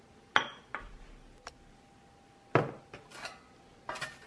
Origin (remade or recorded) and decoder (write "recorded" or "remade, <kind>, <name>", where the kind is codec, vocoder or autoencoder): recorded